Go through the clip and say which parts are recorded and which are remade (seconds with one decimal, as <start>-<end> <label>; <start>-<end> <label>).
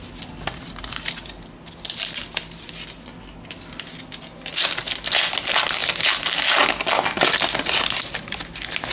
0.0-8.9 recorded